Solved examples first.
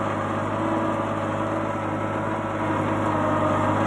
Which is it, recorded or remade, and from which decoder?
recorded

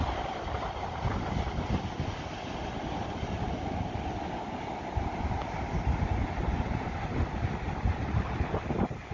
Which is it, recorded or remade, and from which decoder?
recorded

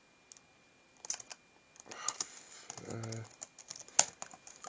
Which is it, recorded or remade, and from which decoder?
recorded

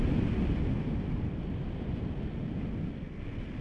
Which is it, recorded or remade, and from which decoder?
recorded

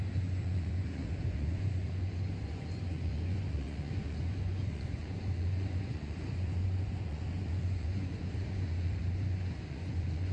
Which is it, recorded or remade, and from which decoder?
remade, vocoder, Vocos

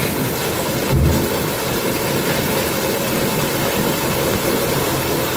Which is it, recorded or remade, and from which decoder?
recorded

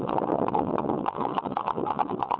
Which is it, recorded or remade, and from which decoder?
remade, vocoder, Vocos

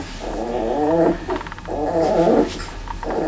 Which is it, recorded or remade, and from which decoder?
recorded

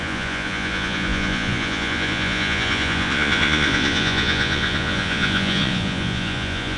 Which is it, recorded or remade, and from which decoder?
remade, vocoder, Vocos